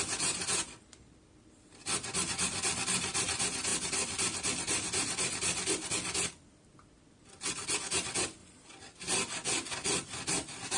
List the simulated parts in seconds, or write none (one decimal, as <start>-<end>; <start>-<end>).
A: none